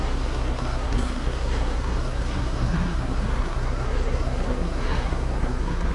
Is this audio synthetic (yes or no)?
yes